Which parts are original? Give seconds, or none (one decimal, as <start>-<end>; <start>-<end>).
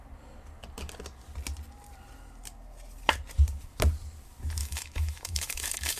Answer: 0.0-4.6